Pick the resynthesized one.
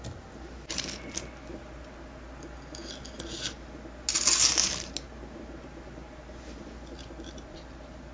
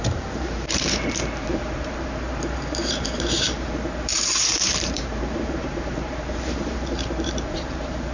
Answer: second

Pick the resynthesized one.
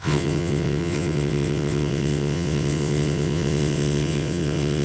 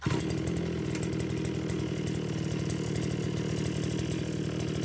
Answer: first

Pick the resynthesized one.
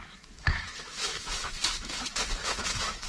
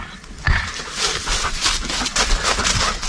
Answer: first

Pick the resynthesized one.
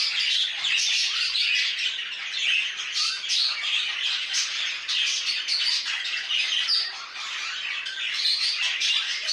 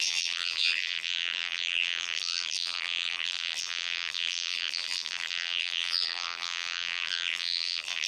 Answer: second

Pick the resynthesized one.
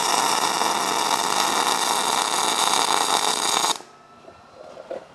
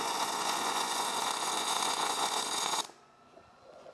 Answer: second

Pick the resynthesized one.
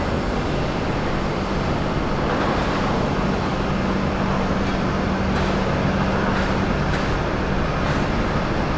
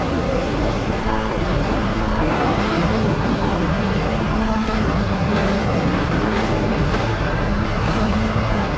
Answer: second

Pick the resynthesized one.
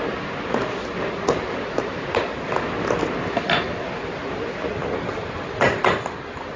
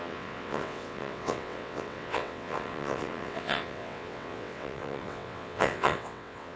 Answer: second